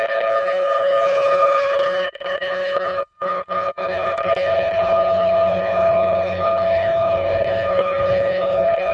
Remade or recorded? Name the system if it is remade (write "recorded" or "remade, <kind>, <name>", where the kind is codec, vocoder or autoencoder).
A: remade, codec, HILCodec